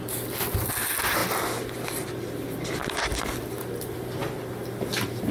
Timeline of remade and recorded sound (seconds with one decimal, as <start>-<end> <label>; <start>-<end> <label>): 0.0-5.3 recorded